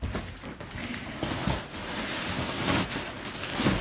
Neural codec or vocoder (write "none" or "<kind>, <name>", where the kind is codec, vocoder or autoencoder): none